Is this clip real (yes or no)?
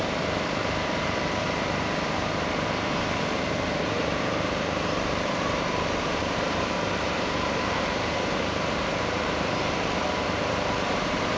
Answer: no